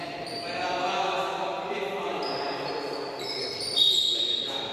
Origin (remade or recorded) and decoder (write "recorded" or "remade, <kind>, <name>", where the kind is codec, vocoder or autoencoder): recorded